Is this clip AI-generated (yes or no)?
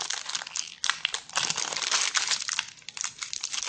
no